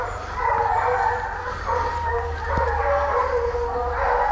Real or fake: real